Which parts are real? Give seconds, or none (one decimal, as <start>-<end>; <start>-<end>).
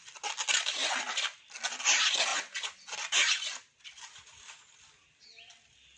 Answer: 0.0-6.0